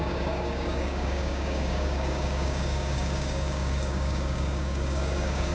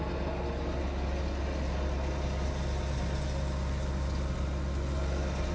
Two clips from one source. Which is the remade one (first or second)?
first